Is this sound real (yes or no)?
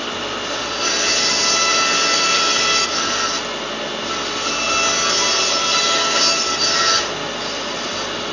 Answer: yes